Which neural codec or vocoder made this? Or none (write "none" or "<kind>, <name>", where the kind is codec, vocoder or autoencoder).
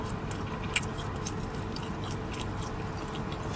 none